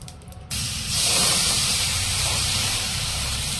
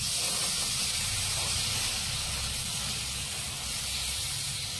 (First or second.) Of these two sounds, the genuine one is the second